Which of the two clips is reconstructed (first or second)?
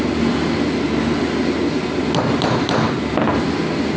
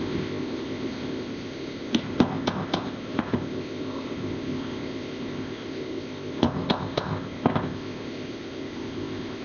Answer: second